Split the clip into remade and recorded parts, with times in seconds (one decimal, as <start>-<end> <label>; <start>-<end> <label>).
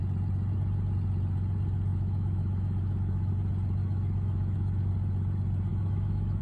0.0-1.9 recorded; 1.9-3.3 remade; 3.3-3.8 recorded; 3.8-4.9 remade; 4.9-5.7 recorded; 5.7-6.4 remade